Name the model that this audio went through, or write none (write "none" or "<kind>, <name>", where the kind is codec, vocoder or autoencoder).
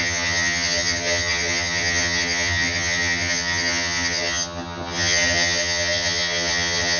vocoder, HiFi-GAN